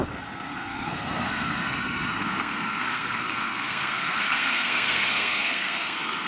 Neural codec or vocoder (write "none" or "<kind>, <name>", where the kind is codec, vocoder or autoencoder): codec, SNAC